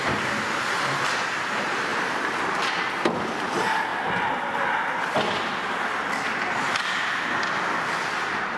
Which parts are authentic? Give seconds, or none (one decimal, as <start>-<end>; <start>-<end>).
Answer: 0.0-8.6